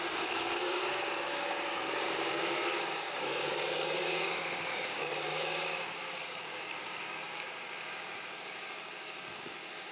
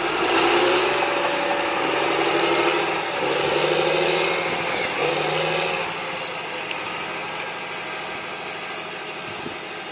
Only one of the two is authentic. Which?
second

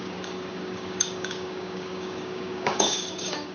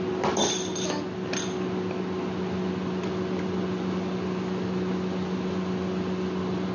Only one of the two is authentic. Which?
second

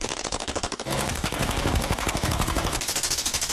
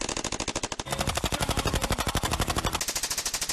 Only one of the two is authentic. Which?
second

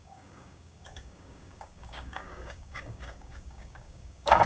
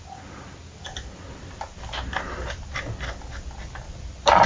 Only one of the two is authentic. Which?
second